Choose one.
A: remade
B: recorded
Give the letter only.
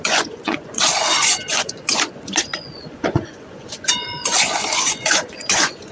A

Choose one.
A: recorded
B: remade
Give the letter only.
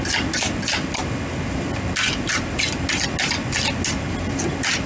A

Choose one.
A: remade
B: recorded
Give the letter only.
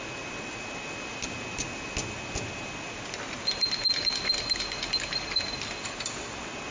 B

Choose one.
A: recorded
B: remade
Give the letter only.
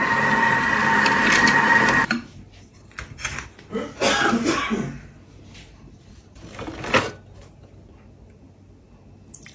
A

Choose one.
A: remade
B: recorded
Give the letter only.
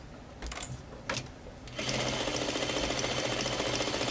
B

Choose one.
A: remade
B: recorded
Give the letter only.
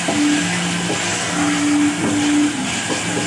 B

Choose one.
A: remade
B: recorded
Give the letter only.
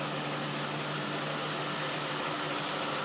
B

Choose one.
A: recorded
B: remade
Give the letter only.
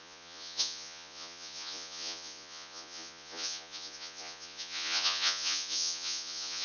B